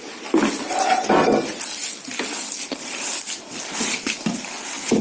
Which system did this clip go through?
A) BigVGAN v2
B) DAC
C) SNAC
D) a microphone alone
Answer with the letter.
D